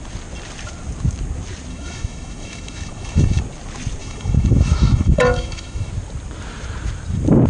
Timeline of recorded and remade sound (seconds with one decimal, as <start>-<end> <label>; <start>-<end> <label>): 0.0-1.7 recorded; 1.7-3.4 remade; 3.4-4.0 recorded; 4.0-5.9 remade; 5.9-7.5 recorded